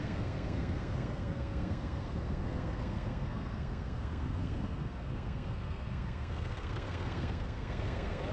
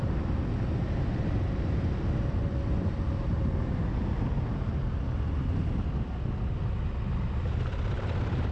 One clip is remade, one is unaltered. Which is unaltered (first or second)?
second